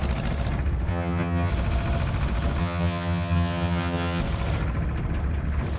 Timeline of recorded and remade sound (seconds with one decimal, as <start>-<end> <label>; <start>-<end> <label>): 0.0-0.9 recorded; 0.9-1.5 remade; 1.5-2.6 recorded; 2.6-4.2 remade; 4.2-5.8 recorded